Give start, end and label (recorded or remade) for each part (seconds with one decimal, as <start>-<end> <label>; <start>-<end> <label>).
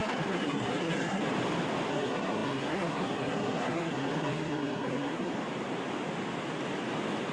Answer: 0.0-1.2 remade; 1.2-1.9 recorded; 1.9-5.3 remade; 5.3-7.3 recorded